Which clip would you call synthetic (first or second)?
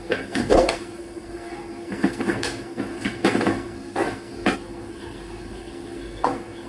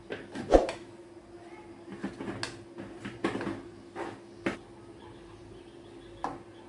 first